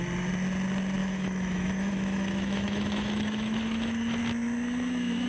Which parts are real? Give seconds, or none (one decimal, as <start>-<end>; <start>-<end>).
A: 0.0-1.0; 4.2-5.3